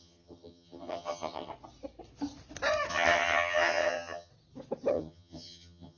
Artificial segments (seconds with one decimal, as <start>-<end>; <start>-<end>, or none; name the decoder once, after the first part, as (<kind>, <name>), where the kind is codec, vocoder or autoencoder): 0.0-1.5 (vocoder, HiFi-GAN); 2.9-4.3; 4.9-6.0